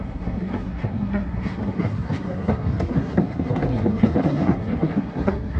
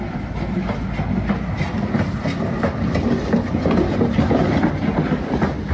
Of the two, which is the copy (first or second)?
first